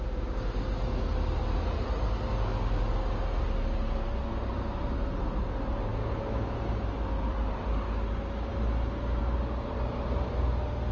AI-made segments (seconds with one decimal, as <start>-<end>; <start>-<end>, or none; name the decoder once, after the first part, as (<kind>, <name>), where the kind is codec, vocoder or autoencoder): none